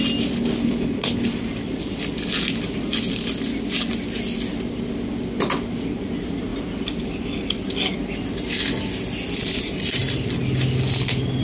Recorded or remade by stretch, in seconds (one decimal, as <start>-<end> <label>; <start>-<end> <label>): 0.0-0.6 recorded; 0.6-1.3 remade; 1.3-11.4 recorded